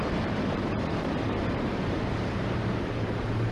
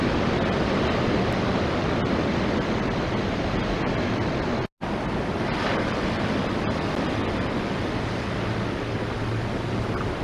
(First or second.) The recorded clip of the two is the second